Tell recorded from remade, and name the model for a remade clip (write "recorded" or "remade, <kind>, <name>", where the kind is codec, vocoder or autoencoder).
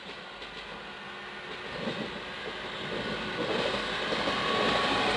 recorded